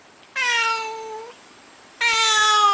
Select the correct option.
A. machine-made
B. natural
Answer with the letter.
B